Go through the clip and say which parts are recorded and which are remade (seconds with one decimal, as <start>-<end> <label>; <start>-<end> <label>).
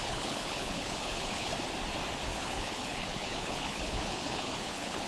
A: 0.0-1.5 remade; 1.5-2.3 recorded; 2.3-5.1 remade